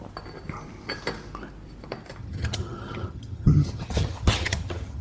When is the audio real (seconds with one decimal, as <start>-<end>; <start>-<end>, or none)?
0.0-2.2